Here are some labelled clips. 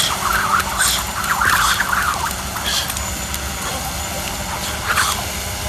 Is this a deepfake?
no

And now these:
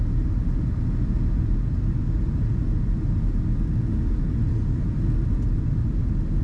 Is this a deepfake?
no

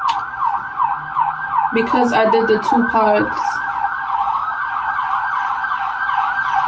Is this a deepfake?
no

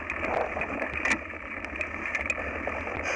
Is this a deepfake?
no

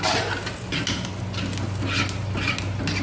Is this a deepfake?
no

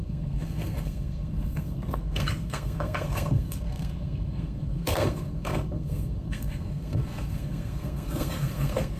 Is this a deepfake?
yes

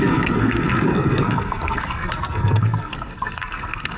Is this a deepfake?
yes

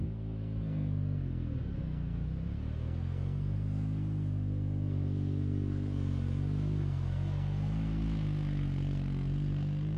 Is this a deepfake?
yes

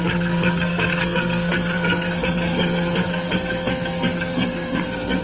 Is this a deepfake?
yes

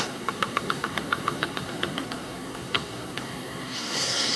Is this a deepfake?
yes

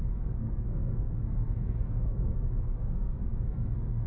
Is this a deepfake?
yes